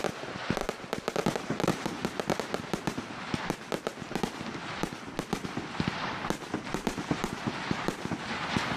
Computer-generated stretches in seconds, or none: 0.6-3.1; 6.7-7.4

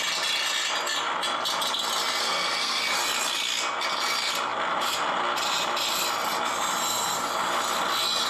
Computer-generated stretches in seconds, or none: 2.2-2.8; 6.8-7.3

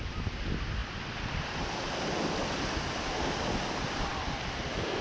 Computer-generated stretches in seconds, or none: none

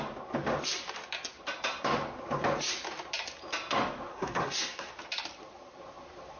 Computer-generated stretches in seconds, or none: 4.1-4.9